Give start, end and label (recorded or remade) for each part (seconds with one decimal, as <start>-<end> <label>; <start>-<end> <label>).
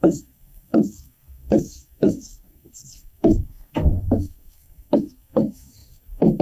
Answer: 0.0-6.4 remade